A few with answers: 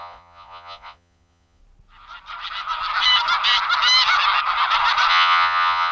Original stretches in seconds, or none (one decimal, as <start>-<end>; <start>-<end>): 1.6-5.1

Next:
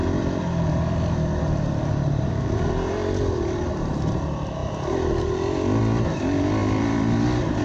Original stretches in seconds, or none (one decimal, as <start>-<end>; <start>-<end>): 4.6-5.8; 6.6-7.6

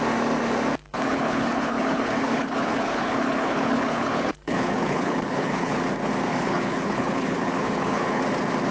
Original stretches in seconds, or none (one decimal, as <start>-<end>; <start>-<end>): 0.0-0.9; 5.8-6.3; 8.2-8.7

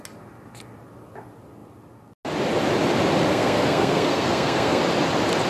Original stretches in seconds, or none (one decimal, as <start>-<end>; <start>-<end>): 0.0-3.3; 4.8-5.5